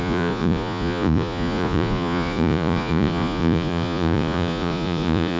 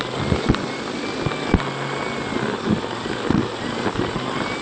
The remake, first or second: first